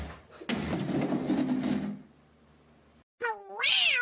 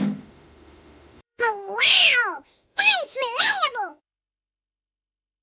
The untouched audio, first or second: first